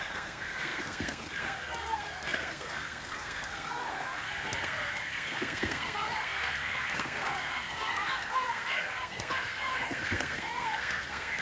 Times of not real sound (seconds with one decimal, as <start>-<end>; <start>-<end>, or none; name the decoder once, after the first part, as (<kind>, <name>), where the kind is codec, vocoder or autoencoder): 0.0-11.4 (codec, SNAC)